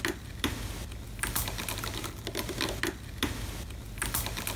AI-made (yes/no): no